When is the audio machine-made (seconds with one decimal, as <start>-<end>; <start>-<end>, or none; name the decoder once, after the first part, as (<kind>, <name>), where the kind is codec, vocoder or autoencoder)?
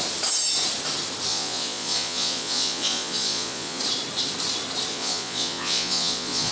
1.3-3.8 (vocoder, Vocos); 4.9-6.5